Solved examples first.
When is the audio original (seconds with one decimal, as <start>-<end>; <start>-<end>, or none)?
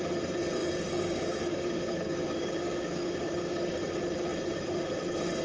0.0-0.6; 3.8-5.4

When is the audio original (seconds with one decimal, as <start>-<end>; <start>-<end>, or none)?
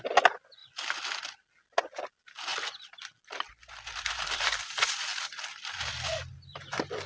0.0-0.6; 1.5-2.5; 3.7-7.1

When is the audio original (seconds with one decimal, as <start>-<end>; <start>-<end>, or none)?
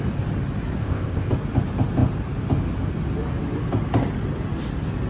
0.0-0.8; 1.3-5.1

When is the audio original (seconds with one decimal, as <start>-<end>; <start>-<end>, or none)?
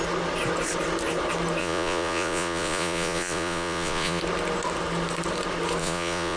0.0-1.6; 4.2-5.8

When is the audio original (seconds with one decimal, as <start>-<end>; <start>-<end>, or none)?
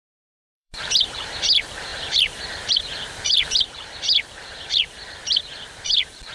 none